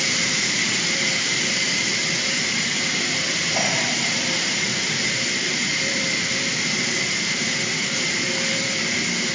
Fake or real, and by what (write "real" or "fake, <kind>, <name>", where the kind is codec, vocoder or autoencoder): fake, vocoder, BigVGAN v2